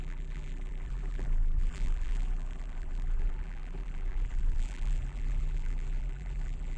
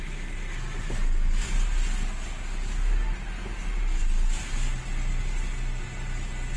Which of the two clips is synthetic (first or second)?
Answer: first